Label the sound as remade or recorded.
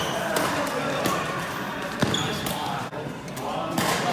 remade